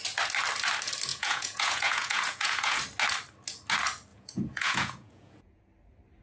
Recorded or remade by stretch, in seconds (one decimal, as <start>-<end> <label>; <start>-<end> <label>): 0.0-1.1 recorded; 1.1-2.8 remade; 2.8-4.1 recorded; 4.1-5.6 remade; 5.6-6.2 recorded